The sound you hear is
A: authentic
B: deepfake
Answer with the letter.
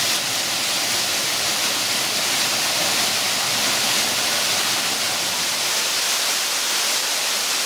A